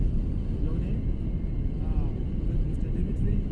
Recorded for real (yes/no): yes